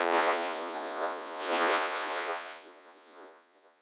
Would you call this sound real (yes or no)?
no